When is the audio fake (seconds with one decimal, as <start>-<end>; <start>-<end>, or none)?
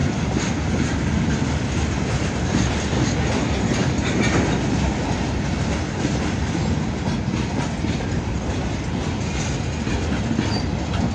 none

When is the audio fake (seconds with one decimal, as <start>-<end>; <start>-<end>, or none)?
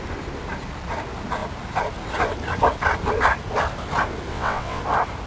4.3-4.8